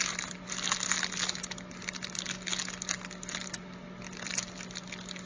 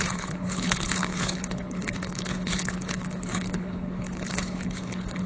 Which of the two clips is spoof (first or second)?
second